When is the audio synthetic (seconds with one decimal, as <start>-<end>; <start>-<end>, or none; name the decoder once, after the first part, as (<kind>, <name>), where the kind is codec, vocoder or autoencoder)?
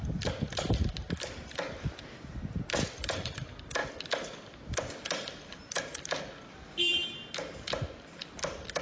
none